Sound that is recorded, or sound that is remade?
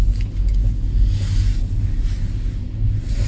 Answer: recorded